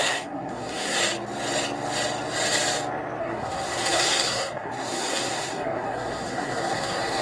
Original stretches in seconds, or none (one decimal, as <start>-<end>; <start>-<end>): 1.0-3.2